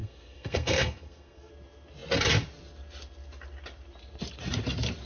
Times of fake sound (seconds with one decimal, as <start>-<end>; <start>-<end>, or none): 0.0-1.5